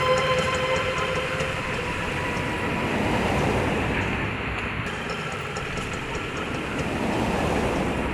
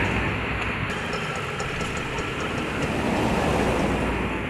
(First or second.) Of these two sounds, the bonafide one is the second